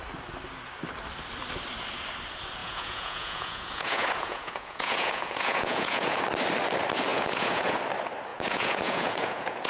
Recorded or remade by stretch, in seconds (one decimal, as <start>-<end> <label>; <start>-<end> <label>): 0.0-2.6 recorded; 2.6-6.2 remade; 6.2-7.1 recorded; 7.1-7.8 remade; 7.8-8.3 recorded; 8.3-9.7 remade